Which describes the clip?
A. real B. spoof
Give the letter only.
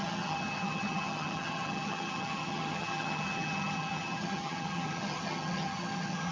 B